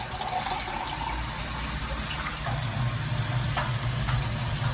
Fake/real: real